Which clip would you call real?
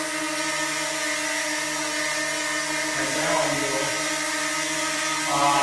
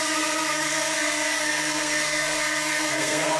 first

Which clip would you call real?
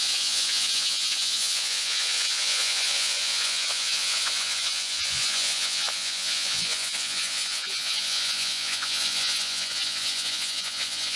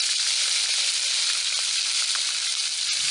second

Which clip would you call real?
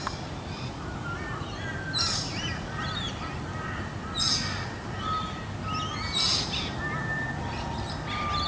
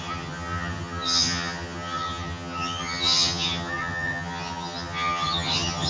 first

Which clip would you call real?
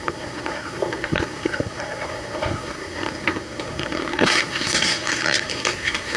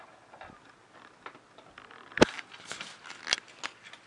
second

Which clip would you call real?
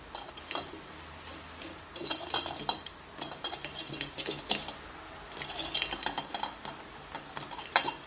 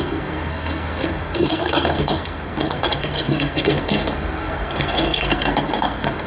first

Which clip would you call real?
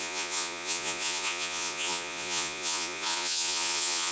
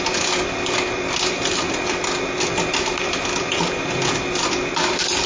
second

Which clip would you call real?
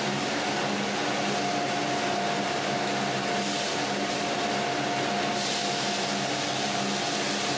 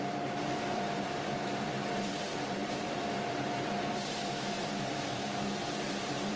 first